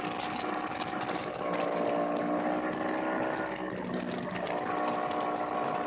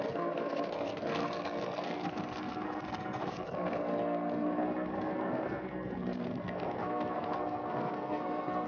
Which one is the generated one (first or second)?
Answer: second